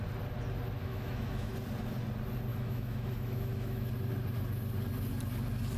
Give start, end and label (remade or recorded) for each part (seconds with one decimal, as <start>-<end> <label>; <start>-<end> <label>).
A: 0.0-0.8 recorded; 0.8-1.5 remade; 1.5-2.5 recorded; 2.5-3.9 remade; 3.9-5.8 recorded